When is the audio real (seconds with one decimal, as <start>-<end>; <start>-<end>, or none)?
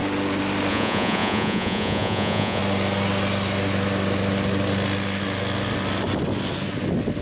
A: 0.0-0.7; 2.6-7.2